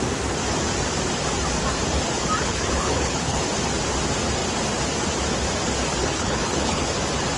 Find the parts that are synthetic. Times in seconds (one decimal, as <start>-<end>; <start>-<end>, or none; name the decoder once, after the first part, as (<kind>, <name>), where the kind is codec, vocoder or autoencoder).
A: 2.4-3.4 (codec, HILCodec); 6.0-6.8